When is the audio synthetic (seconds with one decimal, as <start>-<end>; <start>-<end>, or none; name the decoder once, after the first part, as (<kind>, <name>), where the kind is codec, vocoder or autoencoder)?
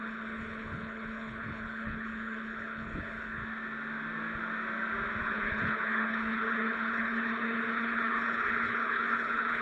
0.0-3.4 (codec, HILCodec); 5.2-9.6